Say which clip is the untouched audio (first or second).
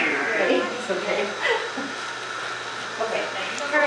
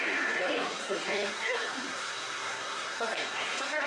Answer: first